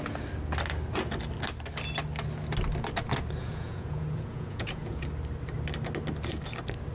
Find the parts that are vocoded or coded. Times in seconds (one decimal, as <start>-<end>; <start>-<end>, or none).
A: 3.4-5.0